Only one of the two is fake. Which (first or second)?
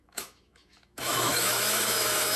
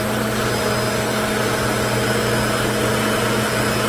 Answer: first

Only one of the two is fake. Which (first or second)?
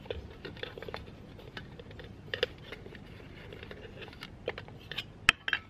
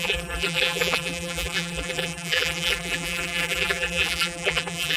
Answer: second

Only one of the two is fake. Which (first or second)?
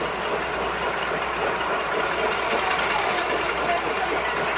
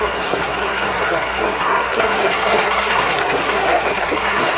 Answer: second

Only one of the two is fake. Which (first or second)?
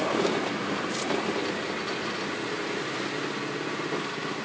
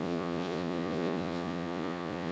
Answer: second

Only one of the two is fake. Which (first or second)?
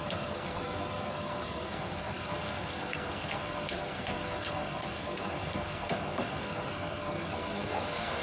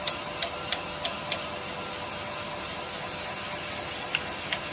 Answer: first